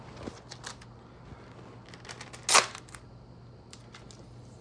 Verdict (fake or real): real